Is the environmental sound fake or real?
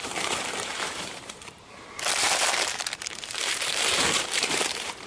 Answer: fake